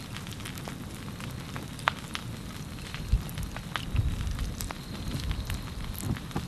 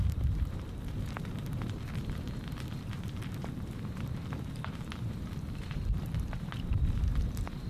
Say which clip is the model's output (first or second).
second